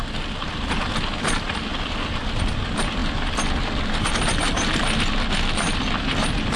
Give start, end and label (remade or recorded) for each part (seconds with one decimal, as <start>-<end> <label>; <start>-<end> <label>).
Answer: 0.0-6.6 recorded